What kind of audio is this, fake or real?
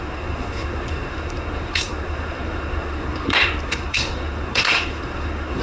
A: fake